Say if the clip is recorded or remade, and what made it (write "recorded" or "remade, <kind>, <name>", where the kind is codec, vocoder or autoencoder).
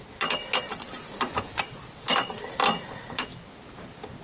recorded